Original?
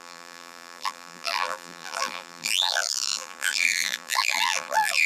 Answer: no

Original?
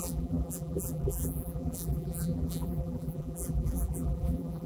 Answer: no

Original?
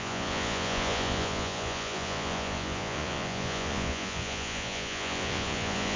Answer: no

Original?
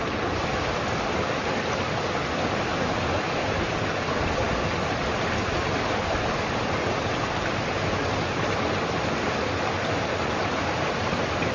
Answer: yes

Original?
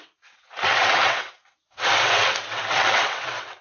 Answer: no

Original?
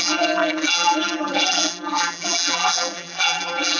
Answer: no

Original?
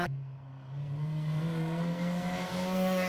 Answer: no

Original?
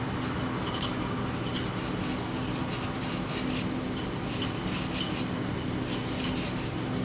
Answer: yes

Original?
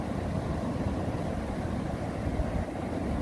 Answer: yes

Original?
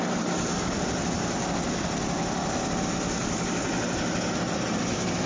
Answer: yes